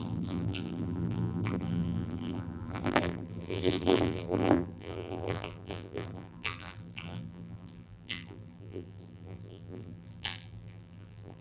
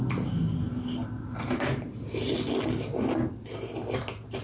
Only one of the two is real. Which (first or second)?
second